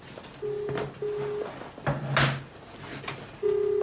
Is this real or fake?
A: real